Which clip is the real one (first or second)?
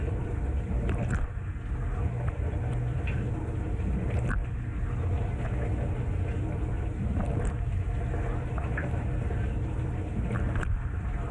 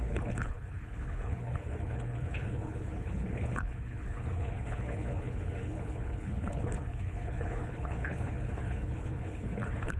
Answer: first